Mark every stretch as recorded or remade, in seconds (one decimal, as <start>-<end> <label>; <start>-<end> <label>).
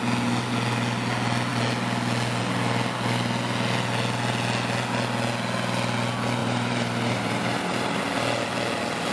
0.0-6.4 recorded; 6.4-8.0 remade; 8.0-9.1 recorded